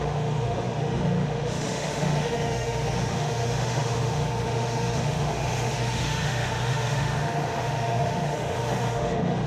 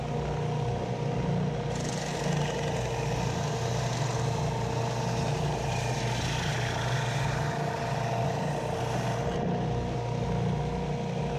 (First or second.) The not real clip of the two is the first